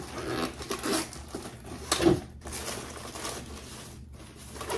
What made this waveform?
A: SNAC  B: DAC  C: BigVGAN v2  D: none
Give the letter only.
D